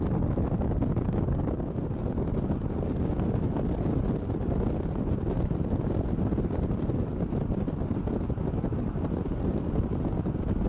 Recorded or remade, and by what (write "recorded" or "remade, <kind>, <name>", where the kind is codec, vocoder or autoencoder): recorded